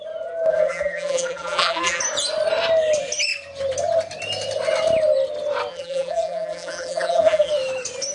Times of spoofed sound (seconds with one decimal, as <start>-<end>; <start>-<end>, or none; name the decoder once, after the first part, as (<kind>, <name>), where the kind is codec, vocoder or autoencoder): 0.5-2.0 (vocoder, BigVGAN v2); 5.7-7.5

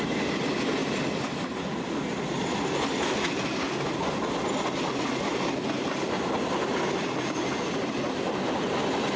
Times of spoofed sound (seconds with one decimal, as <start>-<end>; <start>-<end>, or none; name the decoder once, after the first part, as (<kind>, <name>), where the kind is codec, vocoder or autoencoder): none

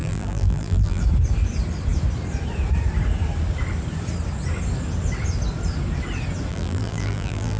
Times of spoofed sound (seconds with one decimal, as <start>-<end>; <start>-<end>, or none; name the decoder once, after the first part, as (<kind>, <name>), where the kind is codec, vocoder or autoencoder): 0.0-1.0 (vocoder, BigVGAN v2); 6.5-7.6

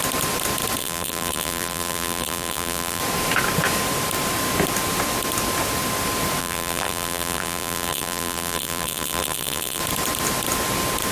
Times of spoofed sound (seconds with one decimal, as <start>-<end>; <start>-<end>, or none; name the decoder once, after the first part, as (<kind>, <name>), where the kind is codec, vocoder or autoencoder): 0.8-3.0 (vocoder, BigVGAN v2); 6.4-9.8

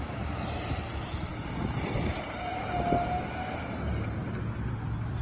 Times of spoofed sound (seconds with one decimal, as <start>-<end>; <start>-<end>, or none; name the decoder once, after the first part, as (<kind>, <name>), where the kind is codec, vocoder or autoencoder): 1.3-2.6 (vocoder, BigVGAN v2)

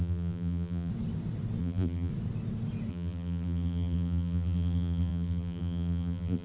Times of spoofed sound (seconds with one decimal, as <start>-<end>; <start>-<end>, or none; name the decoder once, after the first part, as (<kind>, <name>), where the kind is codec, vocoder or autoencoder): 0.0-0.9 (vocoder, BigVGAN v2); 1.6-2.1; 2.9-6.4